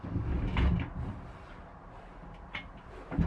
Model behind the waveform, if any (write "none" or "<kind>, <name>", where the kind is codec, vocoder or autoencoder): none